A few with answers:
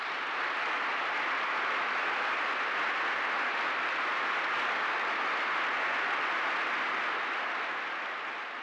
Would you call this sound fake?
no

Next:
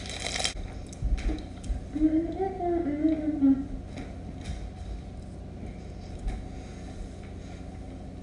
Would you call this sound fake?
no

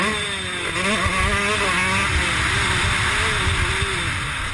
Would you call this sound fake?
no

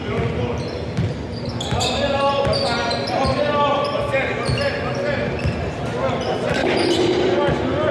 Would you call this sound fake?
no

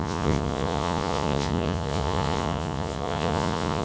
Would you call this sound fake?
yes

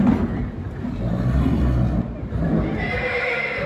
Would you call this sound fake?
no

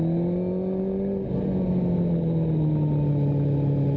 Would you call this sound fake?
no